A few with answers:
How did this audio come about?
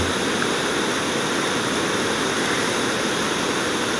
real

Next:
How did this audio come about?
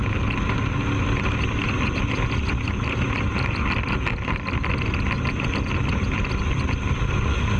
real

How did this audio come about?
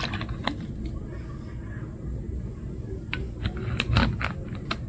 real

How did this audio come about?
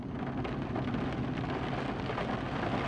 real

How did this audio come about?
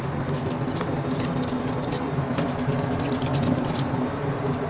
real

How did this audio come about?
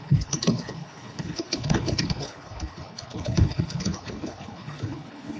fake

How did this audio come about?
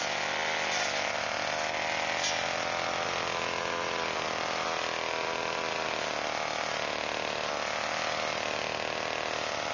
real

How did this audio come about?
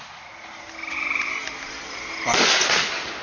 real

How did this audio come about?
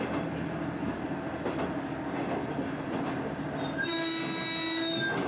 real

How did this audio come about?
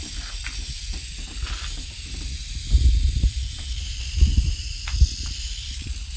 real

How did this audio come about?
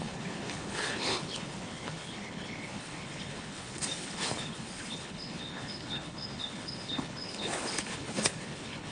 fake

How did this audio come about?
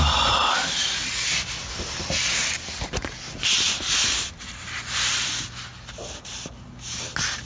real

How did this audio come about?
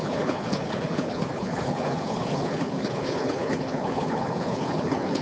fake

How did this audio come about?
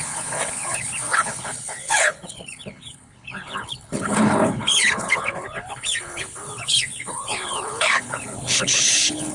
fake